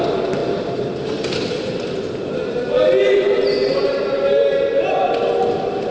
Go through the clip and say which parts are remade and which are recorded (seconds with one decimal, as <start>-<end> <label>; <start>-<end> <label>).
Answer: 0.0-5.9 recorded